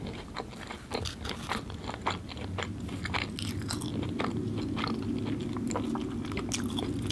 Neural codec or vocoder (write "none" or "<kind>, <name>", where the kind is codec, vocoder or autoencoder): none